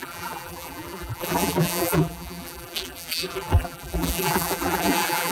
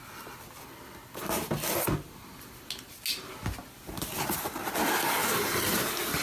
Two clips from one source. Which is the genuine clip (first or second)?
second